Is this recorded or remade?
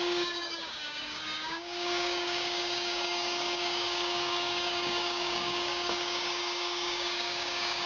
remade